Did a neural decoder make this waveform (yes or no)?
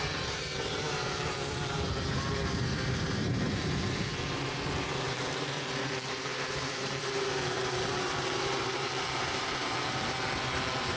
yes